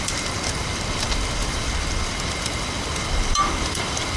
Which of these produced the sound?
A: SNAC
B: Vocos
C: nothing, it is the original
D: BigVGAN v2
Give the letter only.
D